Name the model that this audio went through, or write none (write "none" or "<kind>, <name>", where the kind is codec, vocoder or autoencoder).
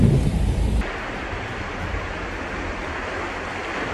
none